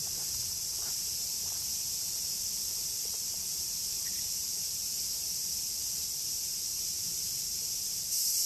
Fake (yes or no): yes